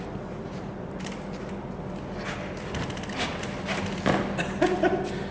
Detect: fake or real real